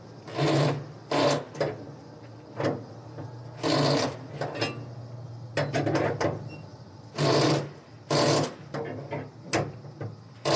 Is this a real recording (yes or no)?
yes